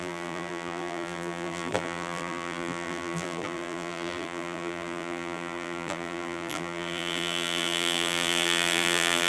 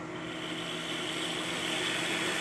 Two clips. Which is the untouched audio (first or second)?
second